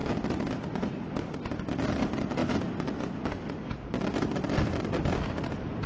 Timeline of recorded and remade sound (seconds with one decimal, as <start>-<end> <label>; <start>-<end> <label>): 0.0-5.9 recorded